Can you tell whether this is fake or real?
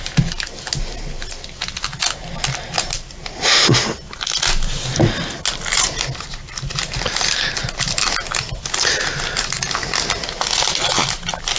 real